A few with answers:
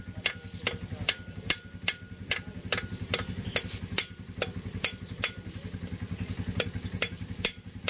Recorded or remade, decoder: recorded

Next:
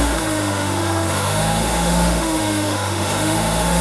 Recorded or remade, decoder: remade, autoencoder, DAC-VAE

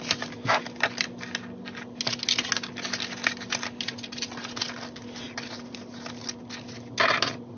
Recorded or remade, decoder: recorded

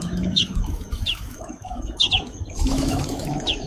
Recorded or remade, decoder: remade, autoencoder, DAC-VAE